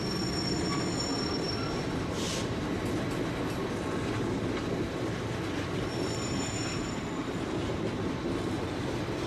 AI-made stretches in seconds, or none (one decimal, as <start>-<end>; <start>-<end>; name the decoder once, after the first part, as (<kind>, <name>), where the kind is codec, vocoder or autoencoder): none